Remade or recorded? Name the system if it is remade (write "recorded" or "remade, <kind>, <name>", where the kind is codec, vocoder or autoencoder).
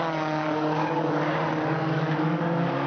remade, codec, DAC